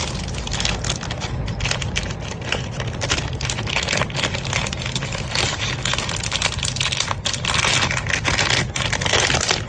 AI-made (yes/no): no